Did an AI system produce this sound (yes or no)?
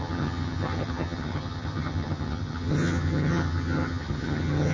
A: yes